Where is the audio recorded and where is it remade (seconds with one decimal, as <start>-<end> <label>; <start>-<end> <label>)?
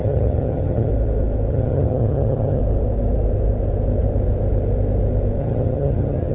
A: 0.0-0.9 remade; 0.9-1.5 recorded; 1.5-2.6 remade; 2.6-5.4 recorded; 5.4-6.3 remade